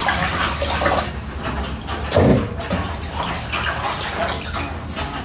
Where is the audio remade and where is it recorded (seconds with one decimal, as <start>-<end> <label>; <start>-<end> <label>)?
0.0-2.3 recorded; 2.3-3.3 remade; 3.3-5.2 recorded